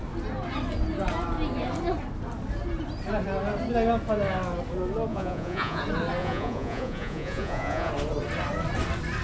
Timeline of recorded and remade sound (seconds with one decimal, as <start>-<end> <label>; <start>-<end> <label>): 0.0-5.1 recorded; 5.1-5.8 remade; 5.8-6.2 recorded; 6.2-7.9 remade; 7.9-9.2 recorded